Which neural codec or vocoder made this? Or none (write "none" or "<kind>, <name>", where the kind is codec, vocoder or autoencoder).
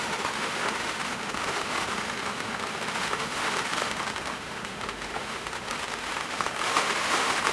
autoencoder, DAC-VAE